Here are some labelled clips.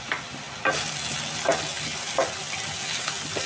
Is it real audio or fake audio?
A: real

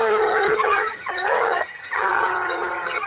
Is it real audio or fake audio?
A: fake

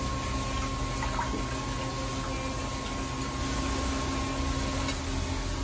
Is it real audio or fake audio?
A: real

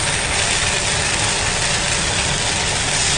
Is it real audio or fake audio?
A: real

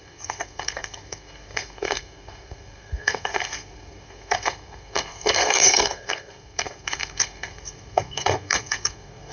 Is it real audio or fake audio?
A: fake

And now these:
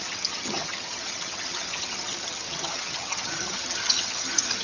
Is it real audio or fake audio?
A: fake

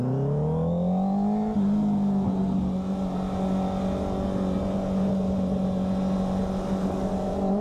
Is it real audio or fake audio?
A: real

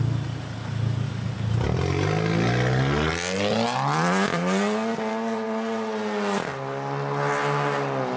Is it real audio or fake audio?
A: real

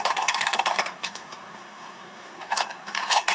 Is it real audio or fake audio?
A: fake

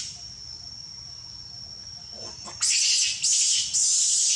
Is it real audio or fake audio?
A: real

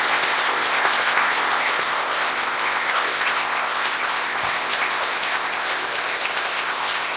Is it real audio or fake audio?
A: fake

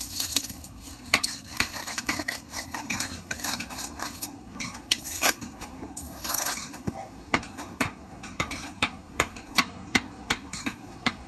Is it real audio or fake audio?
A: fake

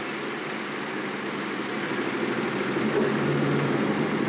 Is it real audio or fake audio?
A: real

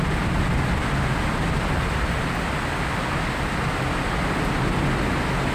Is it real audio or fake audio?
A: real